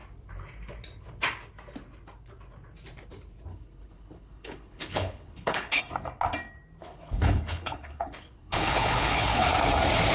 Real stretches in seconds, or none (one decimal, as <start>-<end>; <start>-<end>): 0.0-3.5; 5.8-6.8; 9.5-10.1